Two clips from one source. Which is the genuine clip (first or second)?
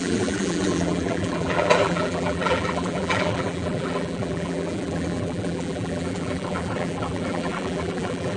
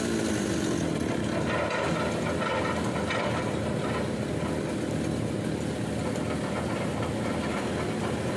second